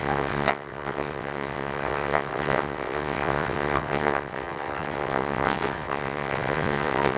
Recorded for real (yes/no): no